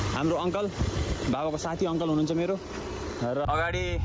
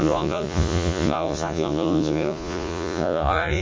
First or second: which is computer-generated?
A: second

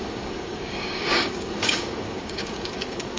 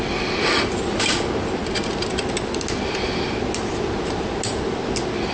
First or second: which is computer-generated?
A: first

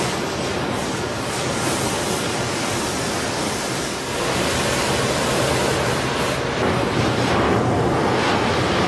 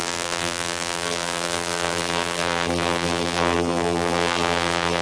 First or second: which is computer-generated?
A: second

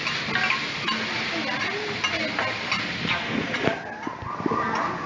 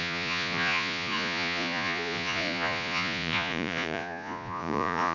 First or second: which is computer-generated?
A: second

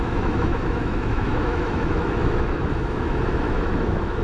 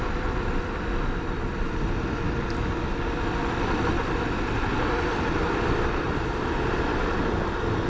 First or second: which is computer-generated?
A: first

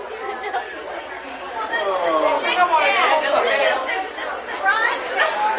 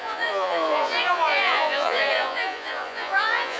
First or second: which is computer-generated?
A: second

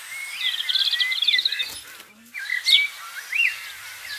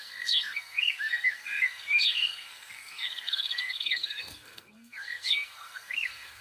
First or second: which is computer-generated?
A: second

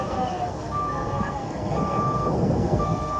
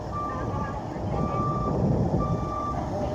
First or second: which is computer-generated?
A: first